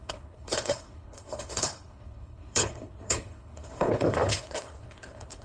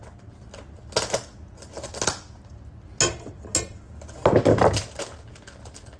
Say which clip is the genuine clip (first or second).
second